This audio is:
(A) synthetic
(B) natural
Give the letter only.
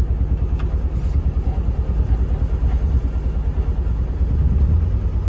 B